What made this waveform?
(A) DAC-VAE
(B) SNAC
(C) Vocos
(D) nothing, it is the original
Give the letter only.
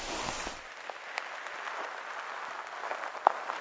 D